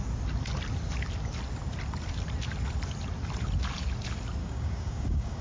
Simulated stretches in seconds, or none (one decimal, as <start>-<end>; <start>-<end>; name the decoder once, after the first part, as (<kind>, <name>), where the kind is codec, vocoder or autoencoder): 4.4-5.4 (codec, DAC)